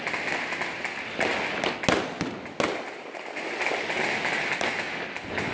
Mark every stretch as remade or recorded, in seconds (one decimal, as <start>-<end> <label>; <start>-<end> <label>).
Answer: 0.0-5.5 recorded